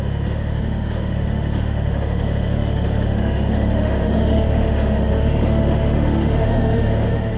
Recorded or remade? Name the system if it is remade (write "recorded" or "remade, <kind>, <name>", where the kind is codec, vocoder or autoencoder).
remade, autoencoder, DAC-VAE